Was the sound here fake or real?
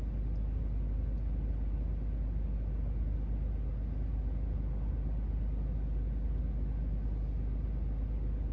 real